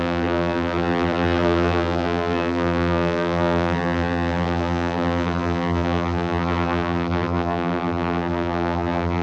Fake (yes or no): yes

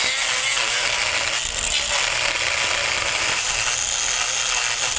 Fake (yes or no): no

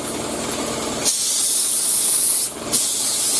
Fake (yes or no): no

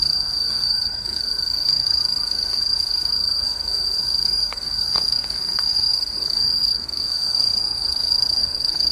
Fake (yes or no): yes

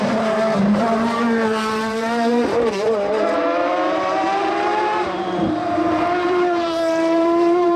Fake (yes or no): yes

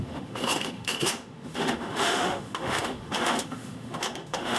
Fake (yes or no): yes